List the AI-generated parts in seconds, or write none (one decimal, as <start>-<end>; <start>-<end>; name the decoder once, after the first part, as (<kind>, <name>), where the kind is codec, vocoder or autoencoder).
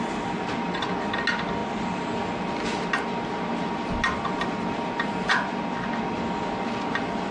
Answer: none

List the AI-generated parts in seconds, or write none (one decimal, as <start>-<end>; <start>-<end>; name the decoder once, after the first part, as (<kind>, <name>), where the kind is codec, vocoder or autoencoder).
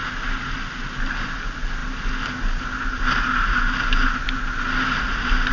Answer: none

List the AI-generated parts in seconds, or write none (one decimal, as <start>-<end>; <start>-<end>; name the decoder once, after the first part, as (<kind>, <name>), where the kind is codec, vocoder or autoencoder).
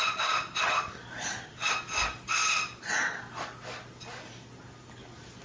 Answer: none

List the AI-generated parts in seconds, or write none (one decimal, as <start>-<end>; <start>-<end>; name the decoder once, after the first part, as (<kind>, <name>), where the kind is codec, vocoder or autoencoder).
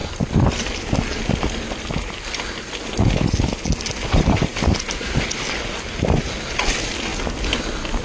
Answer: none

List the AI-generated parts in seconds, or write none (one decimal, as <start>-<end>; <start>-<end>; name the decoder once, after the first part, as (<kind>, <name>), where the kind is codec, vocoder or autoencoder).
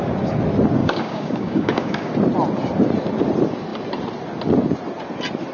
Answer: 0.8-2.1 (codec, DAC)